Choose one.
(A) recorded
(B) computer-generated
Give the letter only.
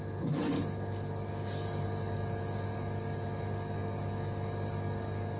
A